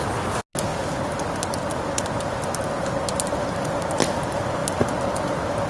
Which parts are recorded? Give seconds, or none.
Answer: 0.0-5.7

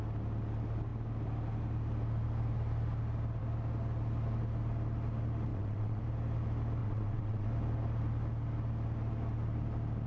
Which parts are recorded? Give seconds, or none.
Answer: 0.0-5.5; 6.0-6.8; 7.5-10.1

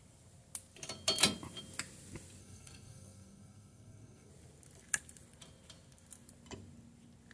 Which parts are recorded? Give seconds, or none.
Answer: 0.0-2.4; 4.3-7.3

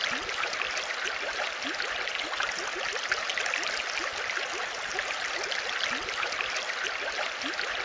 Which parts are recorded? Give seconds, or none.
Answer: 0.0-7.8